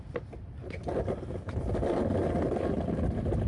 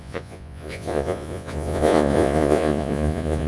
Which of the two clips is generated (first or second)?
second